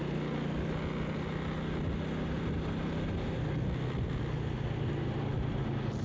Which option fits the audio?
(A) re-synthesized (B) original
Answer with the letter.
B